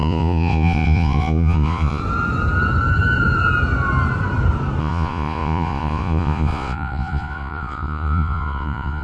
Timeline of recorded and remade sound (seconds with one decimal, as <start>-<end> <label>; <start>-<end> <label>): 0.0-2.0 remade; 2.0-4.8 recorded; 4.8-9.0 remade